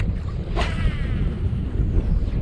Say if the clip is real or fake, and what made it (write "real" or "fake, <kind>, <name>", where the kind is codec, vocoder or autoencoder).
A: real